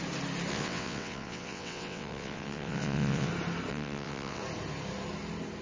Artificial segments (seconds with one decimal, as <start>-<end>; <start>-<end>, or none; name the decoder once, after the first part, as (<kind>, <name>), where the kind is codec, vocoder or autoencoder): 0.5-3.3 (vocoder, WaveNeXt); 3.7-4.4